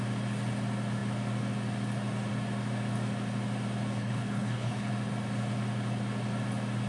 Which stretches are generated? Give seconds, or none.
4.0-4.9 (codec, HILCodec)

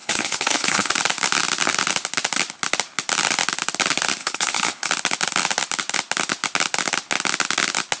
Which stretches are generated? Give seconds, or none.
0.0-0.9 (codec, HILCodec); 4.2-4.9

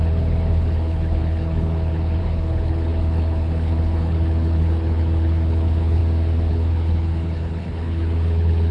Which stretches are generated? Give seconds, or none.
0.0-6.0 (codec, HILCodec); 6.5-8.7

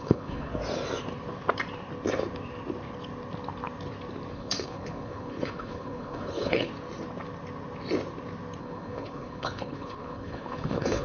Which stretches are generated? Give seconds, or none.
0.0-0.5 (codec, HILCodec); 4.3-6.7; 8.6-11.0

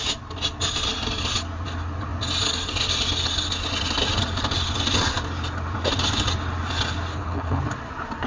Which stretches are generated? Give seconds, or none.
7.1-7.6 (codec, HILCodec)

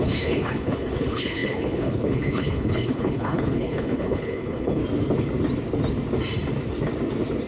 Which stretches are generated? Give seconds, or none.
0.0-4.8 (codec, HILCodec)